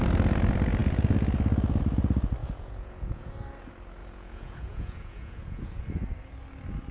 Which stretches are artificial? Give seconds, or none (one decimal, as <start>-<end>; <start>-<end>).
2.4-3.3; 4.0-5.8